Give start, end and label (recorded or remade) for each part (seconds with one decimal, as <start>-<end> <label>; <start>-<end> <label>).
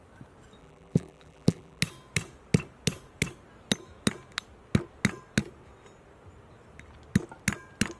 0.0-0.6 recorded; 0.6-1.8 remade; 1.8-8.0 recorded